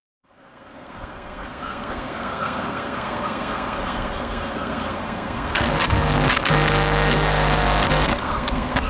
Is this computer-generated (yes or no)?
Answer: yes